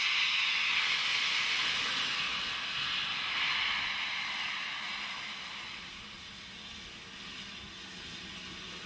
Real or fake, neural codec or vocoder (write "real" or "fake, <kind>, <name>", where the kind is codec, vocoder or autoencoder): real